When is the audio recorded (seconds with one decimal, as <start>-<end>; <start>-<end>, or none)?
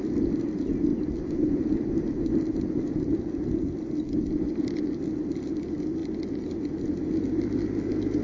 0.0-8.2